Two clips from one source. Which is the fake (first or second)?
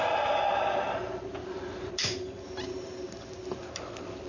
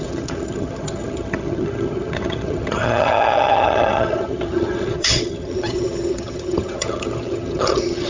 second